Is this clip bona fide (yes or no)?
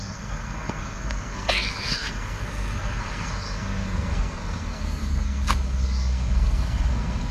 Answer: no